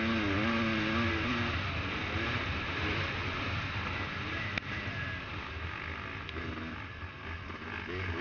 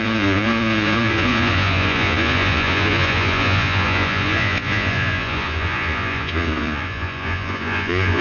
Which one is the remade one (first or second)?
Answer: second